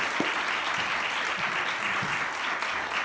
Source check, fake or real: real